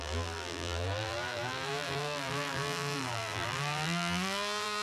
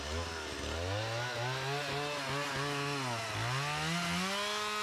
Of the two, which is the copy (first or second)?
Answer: first